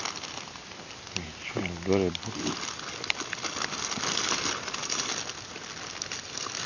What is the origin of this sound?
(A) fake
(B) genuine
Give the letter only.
B